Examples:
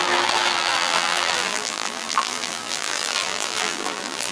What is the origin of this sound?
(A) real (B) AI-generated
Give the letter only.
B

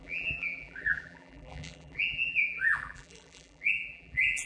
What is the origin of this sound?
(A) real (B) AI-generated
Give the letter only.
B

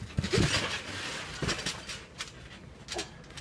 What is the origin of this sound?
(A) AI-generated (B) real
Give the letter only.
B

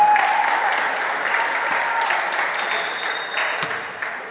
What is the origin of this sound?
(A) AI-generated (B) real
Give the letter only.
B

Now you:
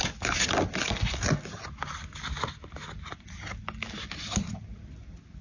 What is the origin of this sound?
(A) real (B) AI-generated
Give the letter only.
A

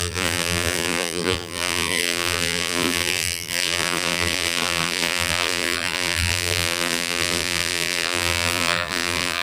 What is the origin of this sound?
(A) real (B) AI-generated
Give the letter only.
B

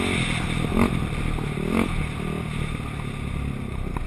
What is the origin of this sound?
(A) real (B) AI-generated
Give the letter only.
A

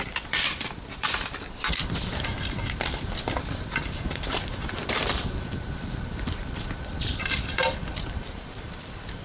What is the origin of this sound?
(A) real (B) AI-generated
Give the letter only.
B